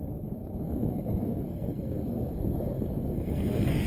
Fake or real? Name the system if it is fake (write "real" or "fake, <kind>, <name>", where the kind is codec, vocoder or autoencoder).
fake, codec, SNAC